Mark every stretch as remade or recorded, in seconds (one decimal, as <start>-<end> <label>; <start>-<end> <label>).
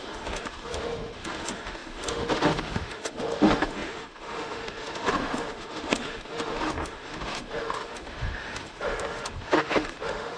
0.0-10.4 remade